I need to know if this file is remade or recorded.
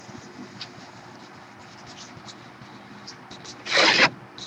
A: recorded